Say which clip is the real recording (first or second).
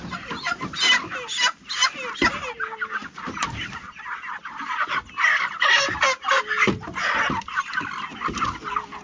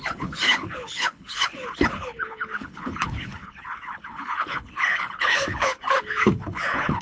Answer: first